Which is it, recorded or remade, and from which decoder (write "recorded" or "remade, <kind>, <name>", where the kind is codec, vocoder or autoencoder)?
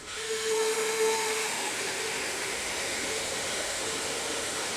remade, autoencoder, DAC-VAE